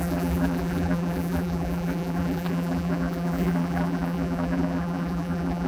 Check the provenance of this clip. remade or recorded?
remade